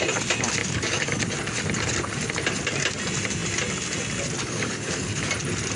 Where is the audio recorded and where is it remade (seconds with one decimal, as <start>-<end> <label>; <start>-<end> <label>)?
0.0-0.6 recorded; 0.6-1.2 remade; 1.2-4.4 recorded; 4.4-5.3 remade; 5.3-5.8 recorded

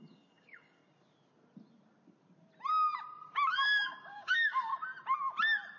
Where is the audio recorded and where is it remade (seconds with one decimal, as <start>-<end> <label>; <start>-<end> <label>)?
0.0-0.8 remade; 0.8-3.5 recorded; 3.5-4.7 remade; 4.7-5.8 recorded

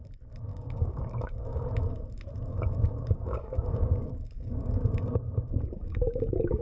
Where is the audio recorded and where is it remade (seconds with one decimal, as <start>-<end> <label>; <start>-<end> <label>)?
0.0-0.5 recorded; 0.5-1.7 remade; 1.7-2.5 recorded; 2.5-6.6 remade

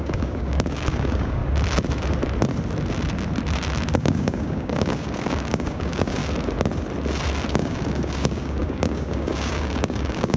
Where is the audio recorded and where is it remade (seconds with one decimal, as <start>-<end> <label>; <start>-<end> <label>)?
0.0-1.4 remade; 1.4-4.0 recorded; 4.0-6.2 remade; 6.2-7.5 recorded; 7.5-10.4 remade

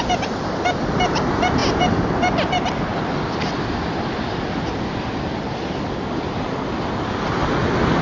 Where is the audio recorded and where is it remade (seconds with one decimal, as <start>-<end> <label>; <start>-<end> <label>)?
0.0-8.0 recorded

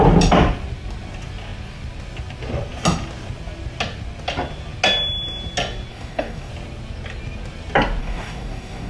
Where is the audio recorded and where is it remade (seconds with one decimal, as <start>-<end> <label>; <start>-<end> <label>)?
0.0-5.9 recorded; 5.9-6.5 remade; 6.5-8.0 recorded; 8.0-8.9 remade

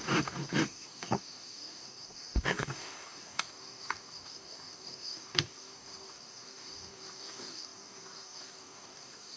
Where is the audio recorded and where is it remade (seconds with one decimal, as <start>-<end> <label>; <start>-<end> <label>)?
0.0-9.4 remade